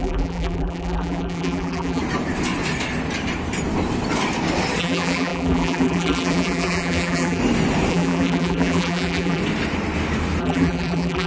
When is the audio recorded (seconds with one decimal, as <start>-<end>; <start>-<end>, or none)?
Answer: 2.0-4.8; 7.4-7.9; 9.4-10.4